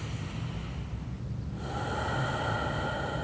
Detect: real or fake real